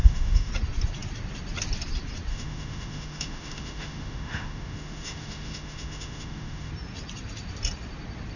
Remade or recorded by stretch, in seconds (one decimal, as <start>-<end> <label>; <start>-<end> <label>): 0.0-0.5 remade; 0.5-2.3 recorded; 2.3-6.7 remade; 6.7-8.4 recorded